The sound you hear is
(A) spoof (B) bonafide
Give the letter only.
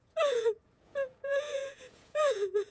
A